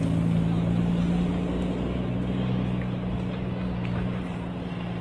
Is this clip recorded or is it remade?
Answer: recorded